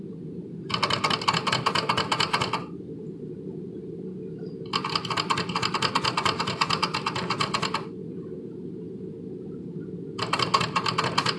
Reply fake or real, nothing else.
real